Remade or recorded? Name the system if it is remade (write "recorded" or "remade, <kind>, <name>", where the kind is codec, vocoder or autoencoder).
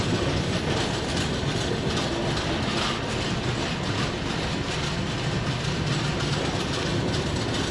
recorded